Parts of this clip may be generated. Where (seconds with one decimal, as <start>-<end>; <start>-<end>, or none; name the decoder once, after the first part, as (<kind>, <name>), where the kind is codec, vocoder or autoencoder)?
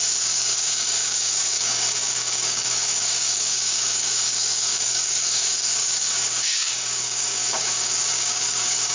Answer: 0.0-8.9 (codec, DAC)